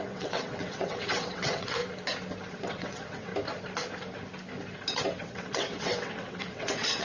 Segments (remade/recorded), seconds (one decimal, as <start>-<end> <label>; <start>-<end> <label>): 0.0-1.8 remade; 1.8-2.5 recorded; 2.5-3.3 remade; 3.3-4.9 recorded; 4.9-7.0 remade